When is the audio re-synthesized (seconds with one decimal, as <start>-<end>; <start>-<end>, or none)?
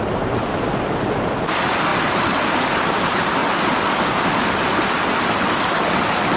none